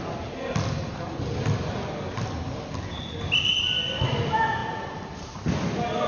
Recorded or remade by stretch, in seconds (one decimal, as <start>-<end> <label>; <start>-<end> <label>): 0.0-6.1 recorded